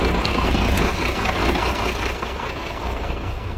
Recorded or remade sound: remade